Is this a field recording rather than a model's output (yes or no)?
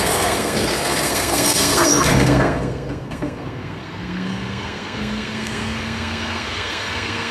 no